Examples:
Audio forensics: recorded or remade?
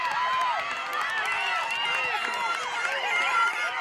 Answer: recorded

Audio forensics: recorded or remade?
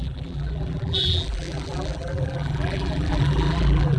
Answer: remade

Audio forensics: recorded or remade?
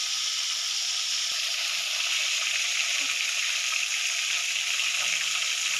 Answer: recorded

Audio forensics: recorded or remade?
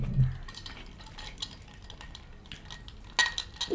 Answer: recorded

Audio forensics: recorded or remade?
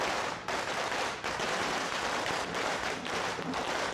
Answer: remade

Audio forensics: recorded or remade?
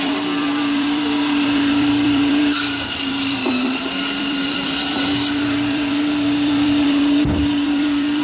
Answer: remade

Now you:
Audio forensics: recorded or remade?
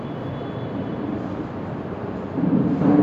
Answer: remade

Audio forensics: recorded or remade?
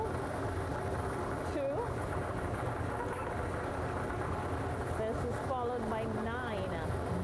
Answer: recorded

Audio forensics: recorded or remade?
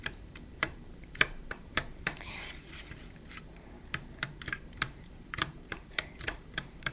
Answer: remade